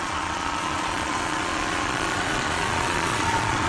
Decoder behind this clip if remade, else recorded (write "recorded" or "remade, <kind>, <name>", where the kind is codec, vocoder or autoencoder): remade, vocoder, Vocos